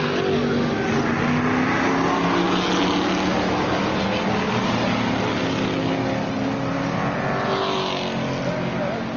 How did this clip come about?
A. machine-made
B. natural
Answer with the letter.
B